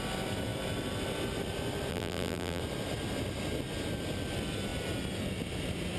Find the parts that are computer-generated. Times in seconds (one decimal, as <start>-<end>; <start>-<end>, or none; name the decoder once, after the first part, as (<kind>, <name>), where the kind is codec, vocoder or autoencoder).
1.9-2.6 (vocoder, BigVGAN v2)